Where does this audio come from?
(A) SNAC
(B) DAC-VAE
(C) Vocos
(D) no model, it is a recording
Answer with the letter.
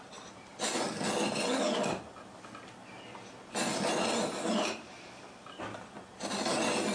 D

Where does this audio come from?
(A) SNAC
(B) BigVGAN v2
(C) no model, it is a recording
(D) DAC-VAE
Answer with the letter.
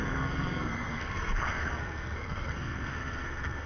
A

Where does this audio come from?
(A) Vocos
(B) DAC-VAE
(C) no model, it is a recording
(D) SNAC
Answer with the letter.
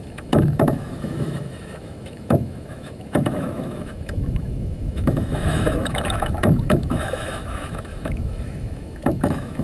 B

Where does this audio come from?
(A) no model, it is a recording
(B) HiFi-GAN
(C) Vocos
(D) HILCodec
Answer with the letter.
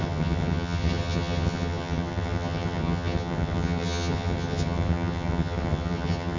B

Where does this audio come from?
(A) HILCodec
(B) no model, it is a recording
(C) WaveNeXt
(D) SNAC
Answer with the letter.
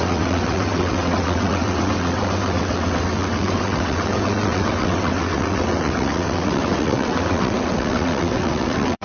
C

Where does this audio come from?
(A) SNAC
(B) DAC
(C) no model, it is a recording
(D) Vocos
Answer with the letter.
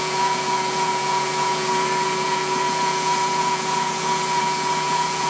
D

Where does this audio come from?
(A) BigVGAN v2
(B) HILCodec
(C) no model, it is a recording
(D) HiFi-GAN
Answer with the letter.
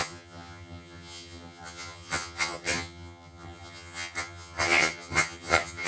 D